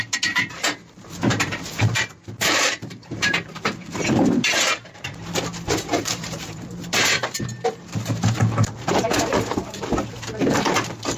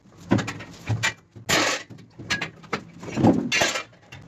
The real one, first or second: second